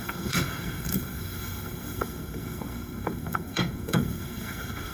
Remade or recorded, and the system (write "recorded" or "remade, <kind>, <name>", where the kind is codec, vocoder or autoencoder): remade, codec, SNAC